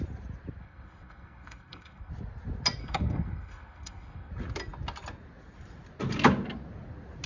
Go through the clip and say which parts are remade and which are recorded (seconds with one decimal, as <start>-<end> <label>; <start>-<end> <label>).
0.0-0.6 recorded; 0.6-2.1 remade; 2.1-2.8 recorded; 2.8-4.3 remade; 4.3-7.3 recorded